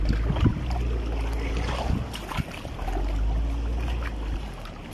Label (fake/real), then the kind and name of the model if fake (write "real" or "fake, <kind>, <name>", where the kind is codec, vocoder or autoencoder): real